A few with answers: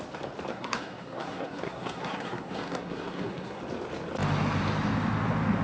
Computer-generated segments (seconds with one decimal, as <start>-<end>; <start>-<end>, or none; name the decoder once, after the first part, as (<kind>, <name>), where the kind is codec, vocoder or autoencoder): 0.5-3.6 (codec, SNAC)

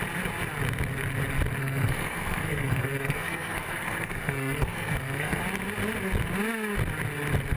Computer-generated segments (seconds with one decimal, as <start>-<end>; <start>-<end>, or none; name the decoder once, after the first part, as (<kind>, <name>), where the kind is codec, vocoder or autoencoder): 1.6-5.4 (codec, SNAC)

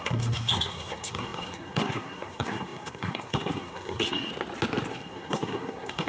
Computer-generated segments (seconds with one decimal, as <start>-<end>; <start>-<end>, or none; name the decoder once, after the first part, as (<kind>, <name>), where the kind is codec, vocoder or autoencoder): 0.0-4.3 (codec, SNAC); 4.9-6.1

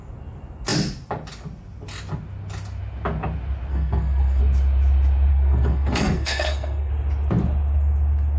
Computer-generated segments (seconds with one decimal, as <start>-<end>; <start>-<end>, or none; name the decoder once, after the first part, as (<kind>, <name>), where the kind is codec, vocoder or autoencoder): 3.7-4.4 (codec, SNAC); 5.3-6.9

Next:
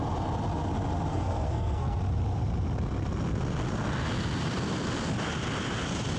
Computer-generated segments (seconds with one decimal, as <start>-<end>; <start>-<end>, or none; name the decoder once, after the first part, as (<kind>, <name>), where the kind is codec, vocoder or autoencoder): 1.1-2.0 (codec, SNAC)

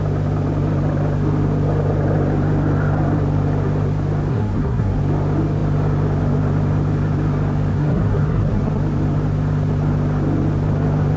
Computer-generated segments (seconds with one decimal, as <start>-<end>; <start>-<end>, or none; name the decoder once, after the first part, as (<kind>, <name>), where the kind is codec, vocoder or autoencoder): 4.3-5.0 (codec, SNAC); 7.7-8.6

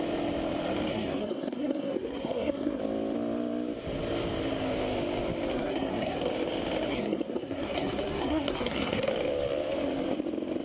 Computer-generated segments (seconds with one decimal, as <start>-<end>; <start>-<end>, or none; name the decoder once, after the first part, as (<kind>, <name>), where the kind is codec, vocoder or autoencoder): 0.9-2.8 (codec, SNAC); 5.5-6.3; 6.9-9.1

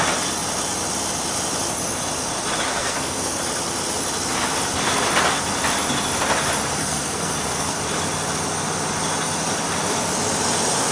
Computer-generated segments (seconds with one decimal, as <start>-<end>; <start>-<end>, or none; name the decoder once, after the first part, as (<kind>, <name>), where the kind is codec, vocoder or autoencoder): 2.7-3.4 (codec, SNAC); 6.8-7.8